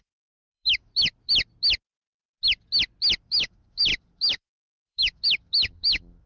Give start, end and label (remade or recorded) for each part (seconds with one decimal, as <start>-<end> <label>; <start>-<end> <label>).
0.0-0.9 remade; 0.9-3.2 recorded; 3.2-6.3 remade